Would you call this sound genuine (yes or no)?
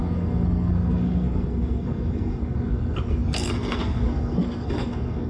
no